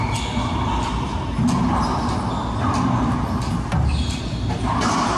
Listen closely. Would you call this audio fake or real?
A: real